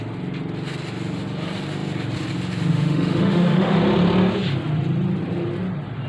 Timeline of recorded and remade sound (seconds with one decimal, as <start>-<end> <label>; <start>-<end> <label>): 0.0-2.7 recorded; 2.7-3.8 remade; 3.8-6.1 recorded